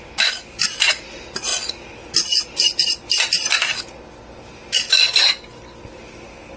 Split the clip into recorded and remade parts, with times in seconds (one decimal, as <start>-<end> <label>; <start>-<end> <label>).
0.0-6.6 recorded